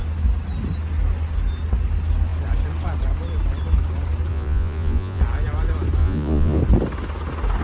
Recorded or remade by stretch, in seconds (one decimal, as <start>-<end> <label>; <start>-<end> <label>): 0.0-4.3 recorded; 4.3-5.2 remade; 5.2-6.0 recorded; 6.0-6.6 remade; 6.6-7.6 recorded